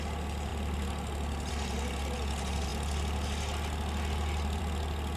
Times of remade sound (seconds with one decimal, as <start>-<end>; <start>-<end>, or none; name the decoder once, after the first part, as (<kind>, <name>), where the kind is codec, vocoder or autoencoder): none